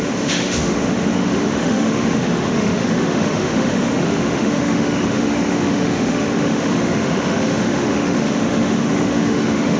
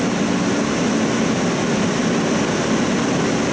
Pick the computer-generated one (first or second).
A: first